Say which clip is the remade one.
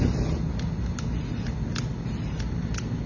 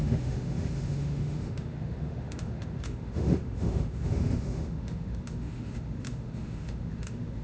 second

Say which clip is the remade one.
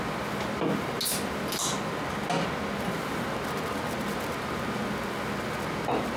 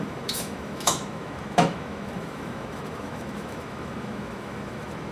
second